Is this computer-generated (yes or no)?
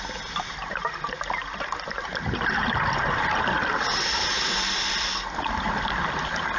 no